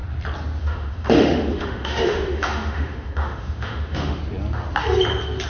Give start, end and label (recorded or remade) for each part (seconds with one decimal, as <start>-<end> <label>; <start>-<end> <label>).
0.0-0.6 recorded; 0.6-4.2 remade; 4.2-5.5 recorded